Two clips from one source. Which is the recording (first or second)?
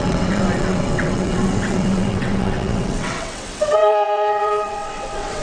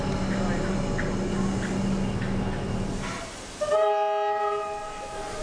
second